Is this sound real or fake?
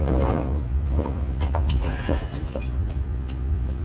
fake